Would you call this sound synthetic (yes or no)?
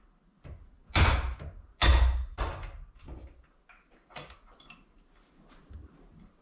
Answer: no